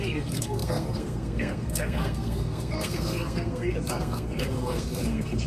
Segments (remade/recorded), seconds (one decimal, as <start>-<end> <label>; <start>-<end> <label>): 0.0-5.5 remade